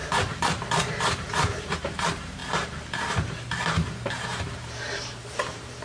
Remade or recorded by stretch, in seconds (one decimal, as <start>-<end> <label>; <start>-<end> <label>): 0.0-5.8 remade